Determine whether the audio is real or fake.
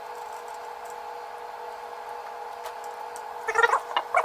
real